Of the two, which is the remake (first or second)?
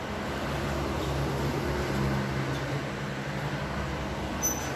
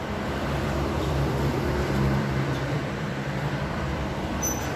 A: second